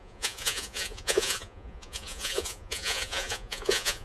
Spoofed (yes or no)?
yes